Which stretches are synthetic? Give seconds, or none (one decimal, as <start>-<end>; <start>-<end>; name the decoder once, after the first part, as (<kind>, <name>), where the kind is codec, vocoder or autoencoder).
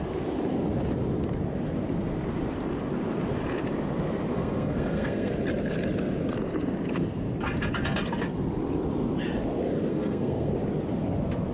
4.3-5.3 (codec, SNAC); 9.9-10.5